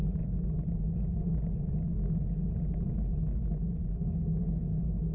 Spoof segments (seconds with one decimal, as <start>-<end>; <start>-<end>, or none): none